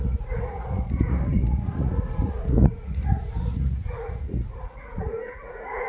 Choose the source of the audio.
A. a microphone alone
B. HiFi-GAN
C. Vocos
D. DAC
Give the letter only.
C